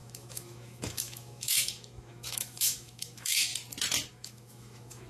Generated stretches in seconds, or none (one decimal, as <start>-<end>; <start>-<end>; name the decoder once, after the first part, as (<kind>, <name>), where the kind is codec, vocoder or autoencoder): 0.0-3.5 (autoencoder, DAC-VAE); 4.1-5.1